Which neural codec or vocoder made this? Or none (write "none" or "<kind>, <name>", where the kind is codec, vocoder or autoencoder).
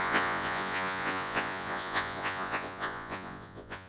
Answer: vocoder, Vocos